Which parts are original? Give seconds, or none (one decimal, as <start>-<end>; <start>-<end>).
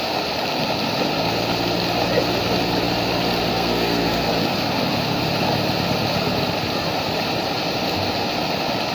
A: 0.0-3.5; 4.3-8.9